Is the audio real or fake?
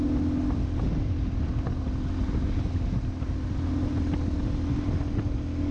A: real